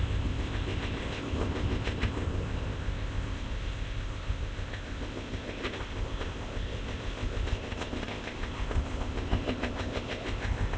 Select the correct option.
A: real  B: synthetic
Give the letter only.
B